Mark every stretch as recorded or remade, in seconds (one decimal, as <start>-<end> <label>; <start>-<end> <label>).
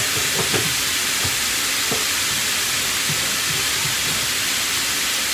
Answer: 0.0-5.3 remade